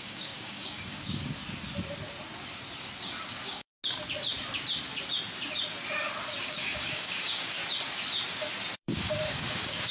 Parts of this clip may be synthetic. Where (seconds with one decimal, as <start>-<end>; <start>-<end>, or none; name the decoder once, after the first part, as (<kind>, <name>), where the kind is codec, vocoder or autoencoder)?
0.0-1.4 (codec, DAC); 3.2-3.7; 6.4-7.6; 8.8-9.9